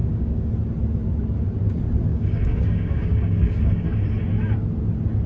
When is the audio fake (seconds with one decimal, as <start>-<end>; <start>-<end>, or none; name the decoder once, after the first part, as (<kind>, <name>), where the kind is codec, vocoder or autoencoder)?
0.0-0.5 (codec, DAC); 2.1-4.0